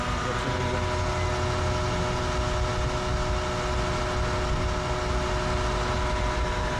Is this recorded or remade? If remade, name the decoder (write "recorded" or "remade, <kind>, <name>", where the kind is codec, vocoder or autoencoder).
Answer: recorded